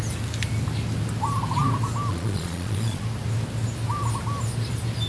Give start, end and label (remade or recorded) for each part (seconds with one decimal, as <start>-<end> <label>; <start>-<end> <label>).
0.0-2.1 recorded; 2.1-3.0 remade; 3.0-5.1 recorded